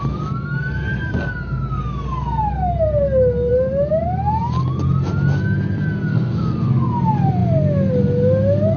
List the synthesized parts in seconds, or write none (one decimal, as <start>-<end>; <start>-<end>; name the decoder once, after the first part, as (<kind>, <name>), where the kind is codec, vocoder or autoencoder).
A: 6.1-6.9 (codec, SNAC)